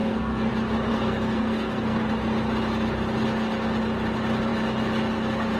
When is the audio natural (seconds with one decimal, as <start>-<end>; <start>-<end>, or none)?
0.5-0.9; 2.1-5.6